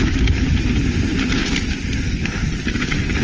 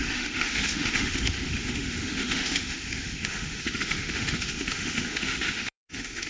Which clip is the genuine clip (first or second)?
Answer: first